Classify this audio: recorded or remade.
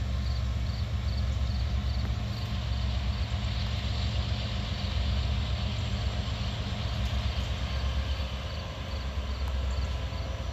recorded